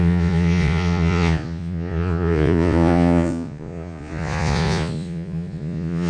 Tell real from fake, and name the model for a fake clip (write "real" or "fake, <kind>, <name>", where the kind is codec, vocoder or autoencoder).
fake, vocoder, Vocos